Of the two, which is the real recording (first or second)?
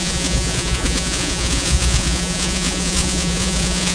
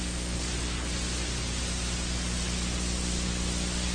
second